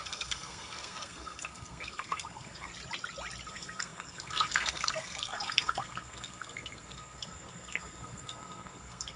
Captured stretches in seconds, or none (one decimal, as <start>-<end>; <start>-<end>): 2.7-3.5